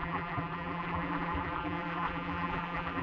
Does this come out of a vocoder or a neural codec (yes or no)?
yes